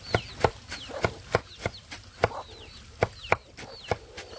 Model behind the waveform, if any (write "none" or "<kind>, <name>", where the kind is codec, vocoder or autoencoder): none